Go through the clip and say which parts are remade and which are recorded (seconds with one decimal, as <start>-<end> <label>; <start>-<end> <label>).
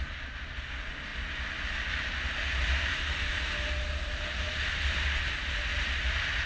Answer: 0.0-1.1 recorded; 1.1-2.1 remade; 2.1-2.9 recorded; 2.9-3.9 remade; 3.9-5.7 recorded; 5.7-6.5 remade